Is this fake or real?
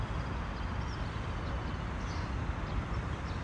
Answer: real